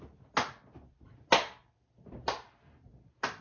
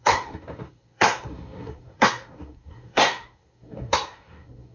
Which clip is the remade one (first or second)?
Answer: second